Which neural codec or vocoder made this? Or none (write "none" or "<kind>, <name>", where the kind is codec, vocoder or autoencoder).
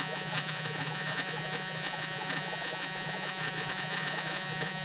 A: vocoder, Vocos